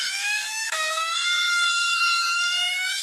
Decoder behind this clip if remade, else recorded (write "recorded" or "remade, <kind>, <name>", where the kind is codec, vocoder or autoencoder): remade, codec, DAC